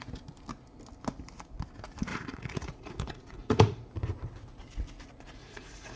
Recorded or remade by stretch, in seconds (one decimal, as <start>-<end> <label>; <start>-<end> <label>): 0.0-2.1 recorded; 2.1-3.9 remade; 3.9-5.4 recorded; 5.4-6.0 remade